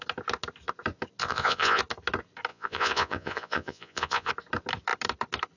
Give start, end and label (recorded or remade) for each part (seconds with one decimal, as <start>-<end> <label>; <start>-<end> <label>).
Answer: 0.0-1.2 recorded; 1.2-1.8 remade; 1.8-2.5 recorded; 2.5-4.3 remade; 4.3-5.6 recorded